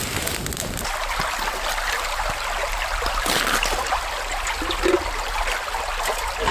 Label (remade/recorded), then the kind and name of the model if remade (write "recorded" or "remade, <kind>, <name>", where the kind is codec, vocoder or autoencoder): recorded